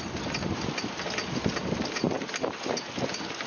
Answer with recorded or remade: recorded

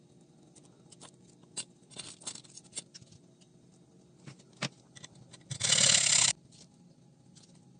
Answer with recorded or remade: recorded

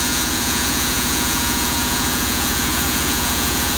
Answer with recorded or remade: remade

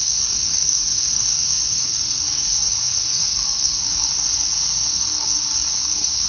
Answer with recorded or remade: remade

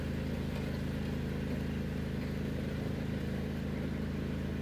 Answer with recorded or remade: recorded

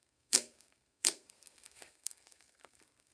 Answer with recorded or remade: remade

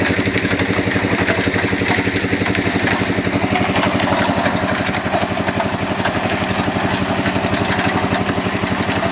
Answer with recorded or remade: recorded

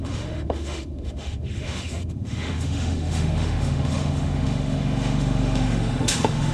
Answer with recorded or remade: remade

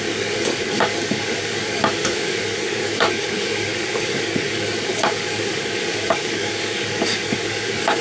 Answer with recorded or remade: remade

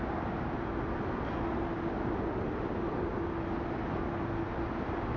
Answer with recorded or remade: recorded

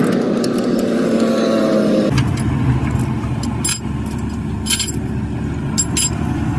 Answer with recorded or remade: recorded